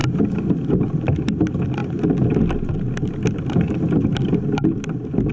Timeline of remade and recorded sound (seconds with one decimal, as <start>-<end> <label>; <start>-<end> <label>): 0.0-5.3 recorded